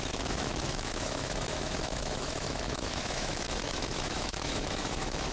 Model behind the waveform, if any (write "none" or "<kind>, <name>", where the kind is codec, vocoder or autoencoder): autoencoder, DAC-VAE